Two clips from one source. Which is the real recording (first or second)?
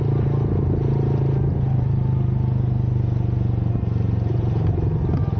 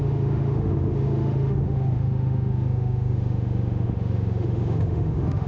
first